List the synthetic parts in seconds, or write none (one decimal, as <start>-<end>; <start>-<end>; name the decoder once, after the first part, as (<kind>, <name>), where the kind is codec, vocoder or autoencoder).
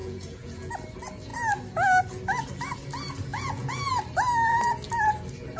0.0-0.7 (vocoder, Vocos); 3.3-3.9